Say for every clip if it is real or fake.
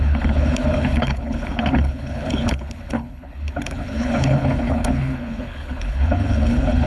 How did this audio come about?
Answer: fake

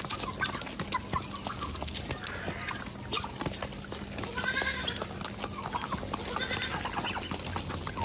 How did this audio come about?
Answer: real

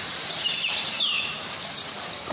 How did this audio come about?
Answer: fake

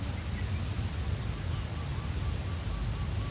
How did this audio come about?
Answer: real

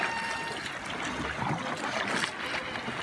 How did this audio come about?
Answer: real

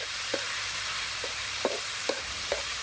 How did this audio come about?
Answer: fake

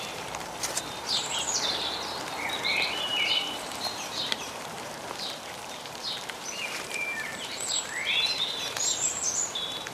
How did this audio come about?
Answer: fake